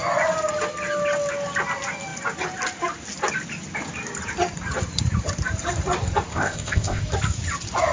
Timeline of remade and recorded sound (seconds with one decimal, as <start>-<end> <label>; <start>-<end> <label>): 0.0-6.3 recorded; 6.3-7.0 remade; 7.0-7.9 recorded